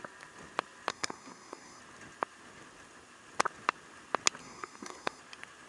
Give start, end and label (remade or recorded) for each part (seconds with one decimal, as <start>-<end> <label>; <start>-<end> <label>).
0.0-0.9 recorded; 0.9-1.8 remade; 1.8-4.4 recorded; 4.4-5.2 remade; 5.2-5.7 recorded